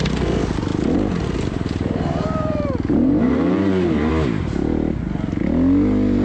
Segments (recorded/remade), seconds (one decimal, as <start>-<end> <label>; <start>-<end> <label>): 0.0-0.7 recorded; 0.7-4.1 remade; 4.1-6.2 recorded